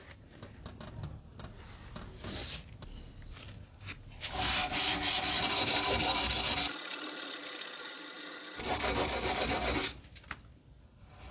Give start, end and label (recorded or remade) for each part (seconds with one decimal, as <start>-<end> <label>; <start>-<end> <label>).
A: 0.0-7.4 recorded; 7.4-8.1 remade; 8.1-9.8 recorded; 9.8-10.4 remade; 10.4-11.3 recorded